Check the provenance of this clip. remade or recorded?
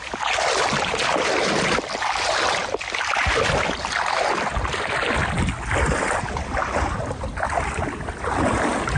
remade